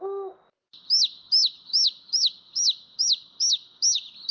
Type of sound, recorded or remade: recorded